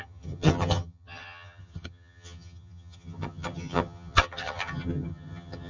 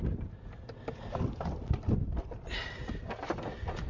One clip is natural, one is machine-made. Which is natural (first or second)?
second